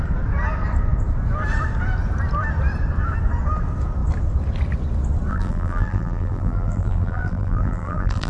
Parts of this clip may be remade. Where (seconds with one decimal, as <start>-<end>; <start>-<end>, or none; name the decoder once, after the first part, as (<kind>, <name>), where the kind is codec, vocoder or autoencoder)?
5.3-8.3 (vocoder, BigVGAN v2)